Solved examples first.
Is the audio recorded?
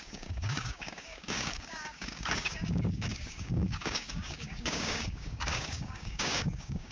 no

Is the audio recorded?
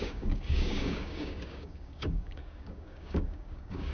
no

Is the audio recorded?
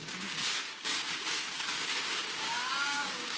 no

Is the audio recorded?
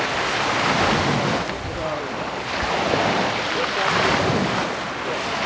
yes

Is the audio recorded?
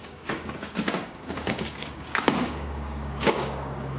no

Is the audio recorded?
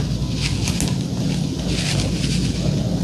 yes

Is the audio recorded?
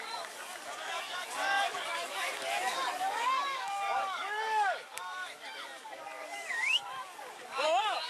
no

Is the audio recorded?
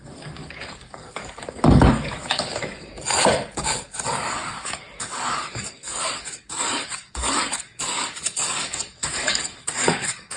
no